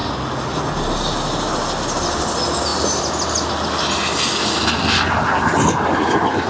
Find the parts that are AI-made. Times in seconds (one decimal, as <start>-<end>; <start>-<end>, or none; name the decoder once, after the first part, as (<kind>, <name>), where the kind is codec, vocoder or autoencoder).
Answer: none